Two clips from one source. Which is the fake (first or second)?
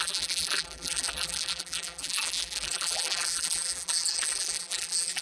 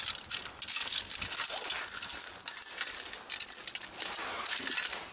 first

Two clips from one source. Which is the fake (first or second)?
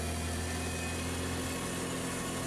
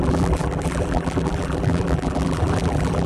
second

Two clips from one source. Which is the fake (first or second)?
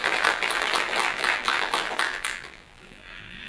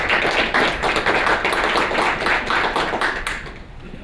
first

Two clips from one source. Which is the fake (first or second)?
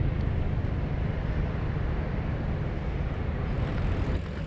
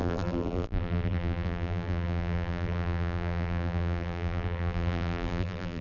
second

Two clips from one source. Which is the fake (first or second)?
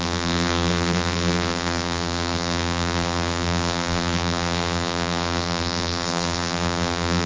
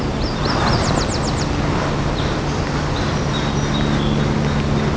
first